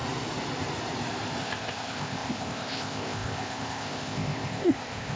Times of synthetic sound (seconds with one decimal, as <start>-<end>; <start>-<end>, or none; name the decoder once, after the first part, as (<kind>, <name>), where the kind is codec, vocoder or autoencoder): 1.4-5.2 (codec, ZipCodec)